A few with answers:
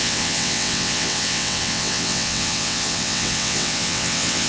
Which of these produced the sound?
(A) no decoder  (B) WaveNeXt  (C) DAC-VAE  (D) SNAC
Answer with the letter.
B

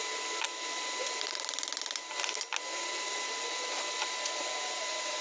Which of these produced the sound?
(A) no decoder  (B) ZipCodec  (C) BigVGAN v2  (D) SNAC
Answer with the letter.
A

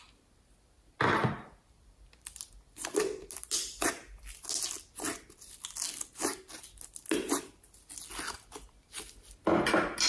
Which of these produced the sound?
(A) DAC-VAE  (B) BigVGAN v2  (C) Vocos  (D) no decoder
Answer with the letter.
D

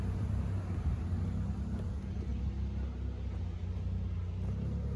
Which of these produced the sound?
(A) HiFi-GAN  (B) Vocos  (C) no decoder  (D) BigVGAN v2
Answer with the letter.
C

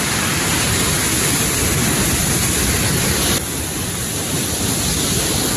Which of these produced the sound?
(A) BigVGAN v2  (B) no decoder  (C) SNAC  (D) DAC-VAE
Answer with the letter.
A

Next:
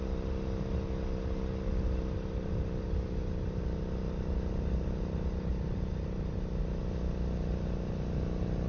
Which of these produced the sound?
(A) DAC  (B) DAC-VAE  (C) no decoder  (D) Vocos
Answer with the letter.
C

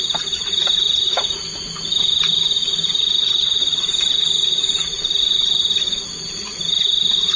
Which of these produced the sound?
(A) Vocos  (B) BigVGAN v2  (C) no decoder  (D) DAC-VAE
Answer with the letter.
C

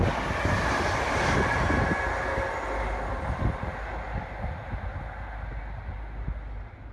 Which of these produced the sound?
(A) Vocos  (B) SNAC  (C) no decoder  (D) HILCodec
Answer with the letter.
C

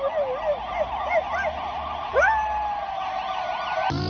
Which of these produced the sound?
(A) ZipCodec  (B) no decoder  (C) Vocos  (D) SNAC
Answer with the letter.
B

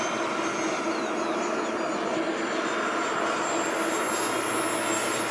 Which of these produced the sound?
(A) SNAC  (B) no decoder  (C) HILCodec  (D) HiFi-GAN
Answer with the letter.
B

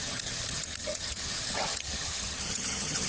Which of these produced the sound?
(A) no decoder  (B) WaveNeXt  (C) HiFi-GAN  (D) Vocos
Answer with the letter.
C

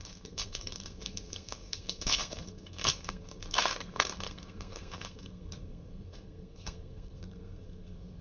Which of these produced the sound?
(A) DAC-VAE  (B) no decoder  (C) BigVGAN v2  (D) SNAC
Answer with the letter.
D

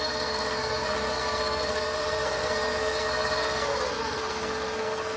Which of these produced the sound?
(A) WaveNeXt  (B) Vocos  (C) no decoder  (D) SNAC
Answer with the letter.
D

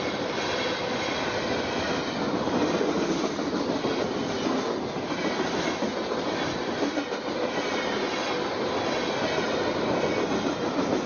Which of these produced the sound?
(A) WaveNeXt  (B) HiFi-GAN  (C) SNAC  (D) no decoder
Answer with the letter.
D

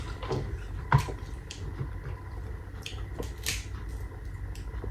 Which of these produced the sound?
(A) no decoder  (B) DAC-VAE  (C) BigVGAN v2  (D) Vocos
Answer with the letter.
A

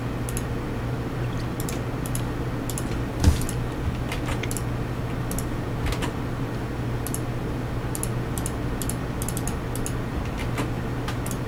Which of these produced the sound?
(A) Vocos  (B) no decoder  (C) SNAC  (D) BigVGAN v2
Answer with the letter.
B